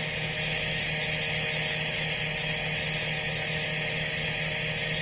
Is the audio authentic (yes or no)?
yes